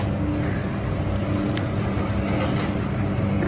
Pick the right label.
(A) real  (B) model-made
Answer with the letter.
A